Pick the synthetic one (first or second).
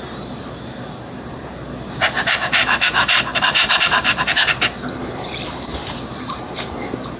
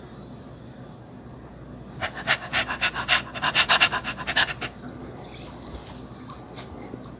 first